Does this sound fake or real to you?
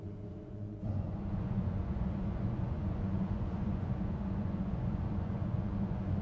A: fake